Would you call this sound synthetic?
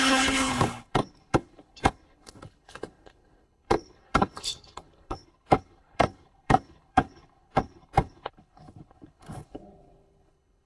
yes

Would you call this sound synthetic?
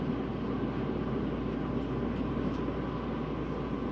no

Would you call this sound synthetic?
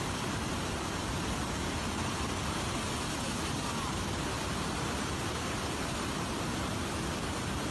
no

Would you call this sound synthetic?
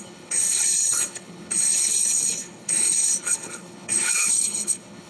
yes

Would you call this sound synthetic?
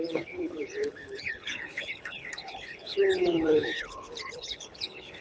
yes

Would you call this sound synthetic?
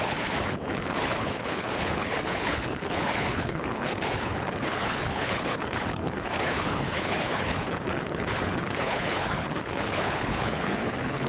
yes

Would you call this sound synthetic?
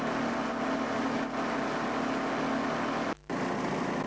no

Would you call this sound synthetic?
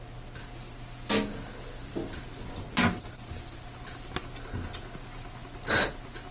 no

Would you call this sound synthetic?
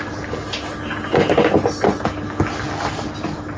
no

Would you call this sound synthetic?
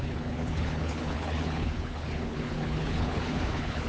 yes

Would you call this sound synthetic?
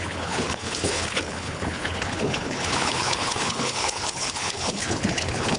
yes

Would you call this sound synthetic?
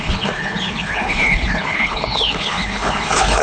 yes